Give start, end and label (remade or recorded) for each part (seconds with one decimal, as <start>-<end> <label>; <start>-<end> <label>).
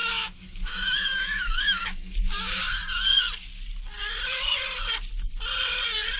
0.0-2.6 remade; 2.6-6.2 recorded